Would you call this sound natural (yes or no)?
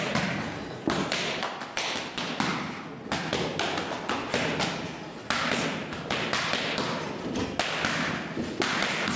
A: yes